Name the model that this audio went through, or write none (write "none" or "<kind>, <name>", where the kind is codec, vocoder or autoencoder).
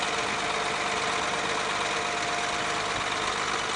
none